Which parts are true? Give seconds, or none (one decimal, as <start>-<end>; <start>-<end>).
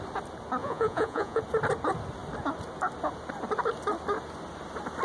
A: 0.0-0.6; 1.4-5.0